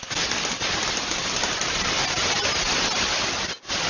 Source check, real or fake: real